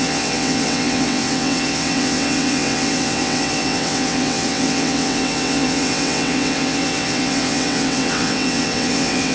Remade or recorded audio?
remade